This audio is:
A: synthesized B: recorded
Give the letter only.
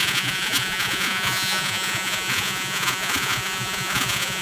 A